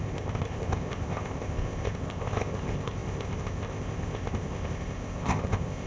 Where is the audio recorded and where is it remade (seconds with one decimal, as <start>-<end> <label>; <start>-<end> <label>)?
0.0-5.9 remade